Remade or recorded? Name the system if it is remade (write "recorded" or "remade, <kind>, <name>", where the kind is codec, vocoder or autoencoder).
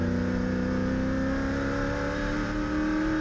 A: recorded